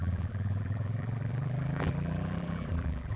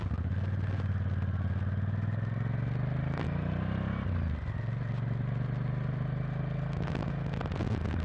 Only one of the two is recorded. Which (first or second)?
second